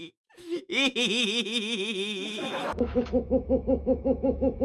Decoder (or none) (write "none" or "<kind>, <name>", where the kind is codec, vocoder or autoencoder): autoencoder, DAC-VAE